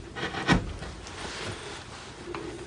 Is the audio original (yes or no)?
yes